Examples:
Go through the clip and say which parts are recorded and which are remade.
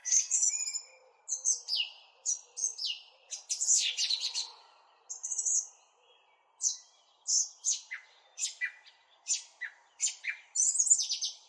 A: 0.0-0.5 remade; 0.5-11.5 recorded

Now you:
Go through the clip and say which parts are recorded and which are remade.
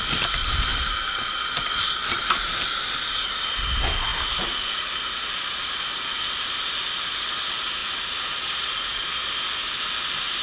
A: 0.0-10.4 recorded